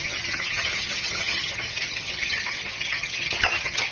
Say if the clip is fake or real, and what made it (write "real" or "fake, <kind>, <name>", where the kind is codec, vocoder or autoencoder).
fake, vocoder, HiFi-GAN